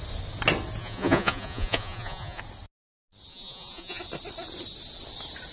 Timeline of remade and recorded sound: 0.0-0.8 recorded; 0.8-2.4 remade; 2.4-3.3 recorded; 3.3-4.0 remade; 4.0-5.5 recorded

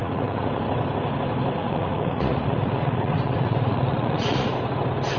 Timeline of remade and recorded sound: 0.0-0.6 remade; 0.6-1.6 recorded; 1.6-4.5 remade; 4.5-5.2 recorded

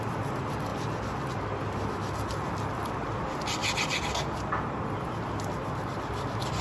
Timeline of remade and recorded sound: 0.0-6.6 recorded

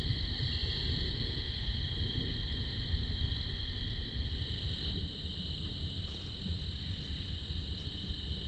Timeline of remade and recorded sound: 0.0-0.6 recorded; 0.6-1.7 remade; 1.7-8.5 recorded

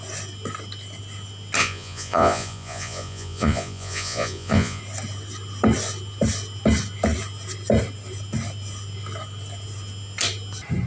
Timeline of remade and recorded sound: 0.0-1.6 recorded; 1.6-4.8 remade; 4.8-10.9 recorded

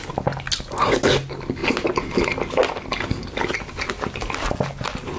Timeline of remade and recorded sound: 0.0-5.2 recorded